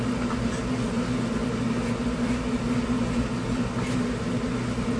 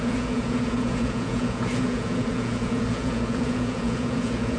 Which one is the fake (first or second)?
second